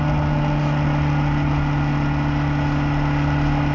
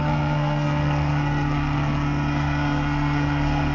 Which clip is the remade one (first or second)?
second